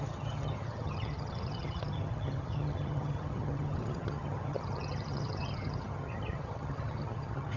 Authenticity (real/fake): fake